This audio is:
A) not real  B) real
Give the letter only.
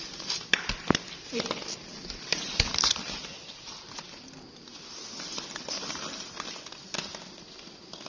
B